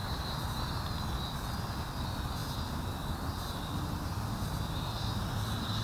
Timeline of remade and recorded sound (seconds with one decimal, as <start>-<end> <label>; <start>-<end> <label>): 0.0-5.8 recorded